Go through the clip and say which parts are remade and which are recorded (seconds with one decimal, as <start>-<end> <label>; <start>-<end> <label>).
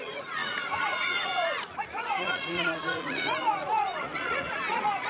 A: 0.0-5.1 remade